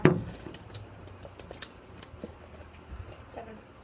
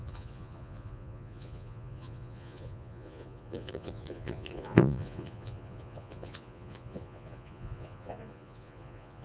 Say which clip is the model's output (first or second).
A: second